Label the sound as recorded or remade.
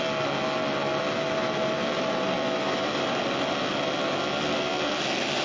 recorded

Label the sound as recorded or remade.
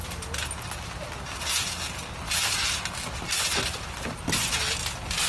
recorded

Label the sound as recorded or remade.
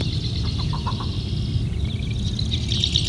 recorded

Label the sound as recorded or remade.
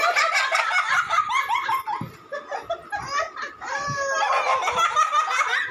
recorded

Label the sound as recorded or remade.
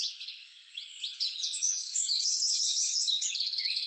remade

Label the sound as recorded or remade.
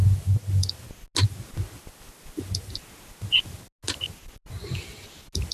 recorded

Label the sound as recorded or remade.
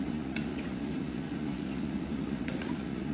remade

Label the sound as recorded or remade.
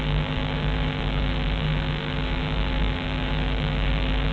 remade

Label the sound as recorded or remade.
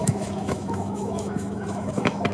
remade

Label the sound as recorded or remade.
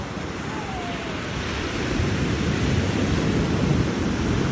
remade